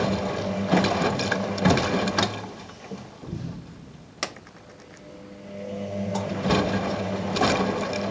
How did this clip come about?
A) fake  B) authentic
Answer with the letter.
B